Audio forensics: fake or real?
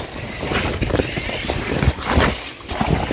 real